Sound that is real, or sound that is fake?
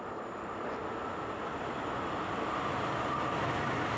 real